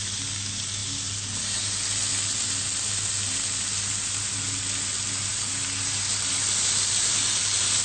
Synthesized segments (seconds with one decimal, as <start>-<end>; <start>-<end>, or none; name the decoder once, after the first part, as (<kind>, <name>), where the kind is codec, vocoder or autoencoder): none